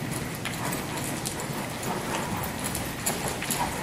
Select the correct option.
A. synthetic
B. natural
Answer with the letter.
B